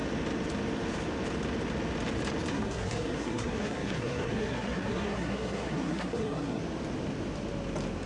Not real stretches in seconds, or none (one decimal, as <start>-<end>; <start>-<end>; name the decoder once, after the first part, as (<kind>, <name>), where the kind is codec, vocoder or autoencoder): 2.5-6.6 (codec, SNAC)